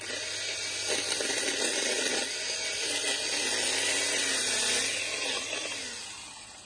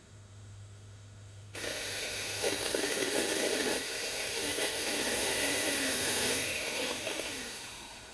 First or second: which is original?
first